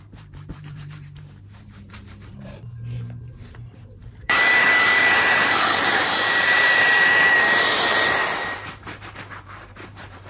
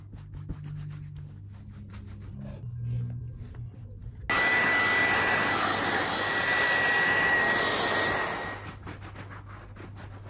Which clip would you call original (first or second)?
second